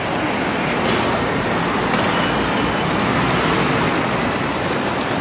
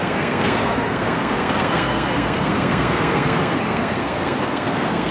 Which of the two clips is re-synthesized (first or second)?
second